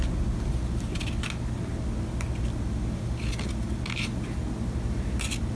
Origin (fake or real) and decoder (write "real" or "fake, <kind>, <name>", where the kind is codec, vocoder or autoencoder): real